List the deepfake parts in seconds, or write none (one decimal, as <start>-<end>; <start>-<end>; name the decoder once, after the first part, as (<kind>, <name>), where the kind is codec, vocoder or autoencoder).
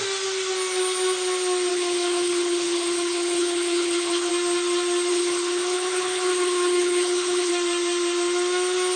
1.7-4.3 (codec, HILCodec); 5.1-7.5